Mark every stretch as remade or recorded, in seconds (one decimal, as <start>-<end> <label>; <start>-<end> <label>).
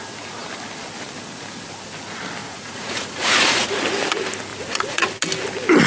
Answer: 0.0-2.4 recorded; 2.4-3.8 remade; 3.8-4.5 recorded; 4.5-5.1 remade; 5.1-5.9 recorded